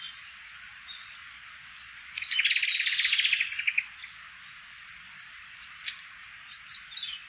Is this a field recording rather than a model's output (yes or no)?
yes